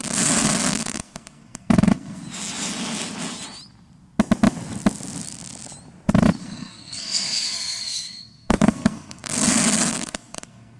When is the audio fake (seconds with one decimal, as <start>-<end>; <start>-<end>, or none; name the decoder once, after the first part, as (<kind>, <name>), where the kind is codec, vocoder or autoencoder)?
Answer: 0.0-2.2 (codec, SNAC); 6.4-10.8